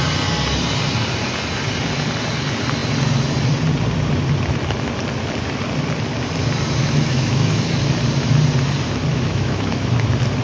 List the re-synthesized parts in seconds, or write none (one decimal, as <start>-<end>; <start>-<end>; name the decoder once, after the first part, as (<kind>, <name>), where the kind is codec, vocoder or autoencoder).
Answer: 6.8-7.8 (autoencoder, DAC-VAE); 9.1-9.8